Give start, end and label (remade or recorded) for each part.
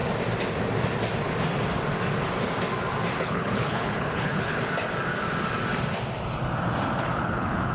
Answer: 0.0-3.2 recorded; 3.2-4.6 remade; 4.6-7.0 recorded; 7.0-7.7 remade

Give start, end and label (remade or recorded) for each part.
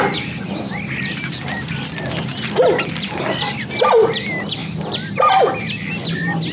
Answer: 0.0-6.5 recorded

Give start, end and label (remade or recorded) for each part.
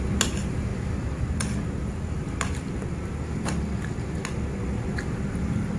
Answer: 0.0-5.8 recorded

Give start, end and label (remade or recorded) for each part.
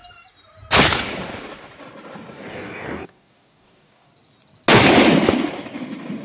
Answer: 0.0-2.5 recorded; 2.5-4.1 remade; 4.1-6.2 recorded